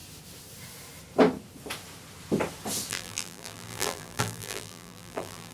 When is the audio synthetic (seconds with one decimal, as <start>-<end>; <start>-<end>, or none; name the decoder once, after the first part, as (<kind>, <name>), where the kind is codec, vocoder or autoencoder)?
2.9-5.5 (vocoder, BigVGAN v2)